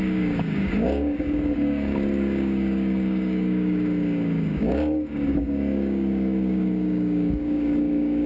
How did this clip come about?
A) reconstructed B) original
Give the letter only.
A